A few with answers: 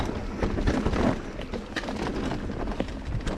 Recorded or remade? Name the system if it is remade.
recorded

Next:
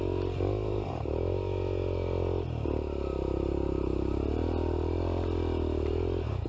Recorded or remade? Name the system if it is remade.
recorded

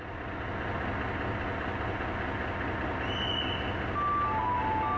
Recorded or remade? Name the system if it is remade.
recorded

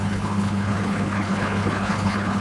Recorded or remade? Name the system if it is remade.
remade, codec, HILCodec